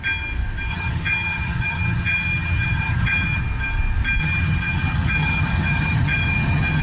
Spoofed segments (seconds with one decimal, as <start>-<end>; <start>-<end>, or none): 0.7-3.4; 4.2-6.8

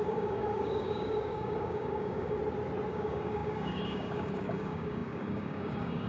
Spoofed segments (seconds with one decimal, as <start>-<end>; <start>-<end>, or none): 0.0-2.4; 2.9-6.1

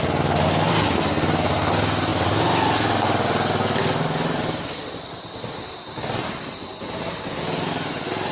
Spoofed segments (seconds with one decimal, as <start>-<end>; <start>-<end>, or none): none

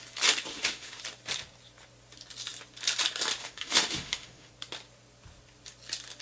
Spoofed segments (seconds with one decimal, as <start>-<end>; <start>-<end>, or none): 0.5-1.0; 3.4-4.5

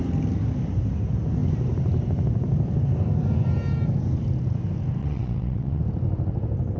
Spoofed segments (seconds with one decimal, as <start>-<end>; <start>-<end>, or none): 5.0-5.8

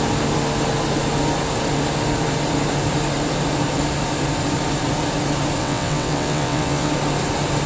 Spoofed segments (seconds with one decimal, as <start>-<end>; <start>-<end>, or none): 5.6-6.9

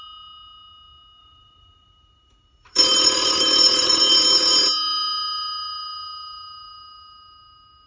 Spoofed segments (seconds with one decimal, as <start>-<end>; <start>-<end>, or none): 1.2-4.0